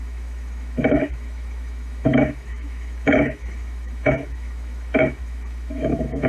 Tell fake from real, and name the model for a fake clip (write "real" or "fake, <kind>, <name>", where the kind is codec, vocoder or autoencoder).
fake, autoencoder, DAC-VAE